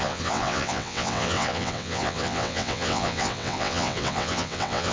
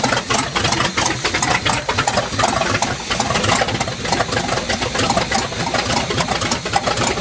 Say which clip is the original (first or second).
second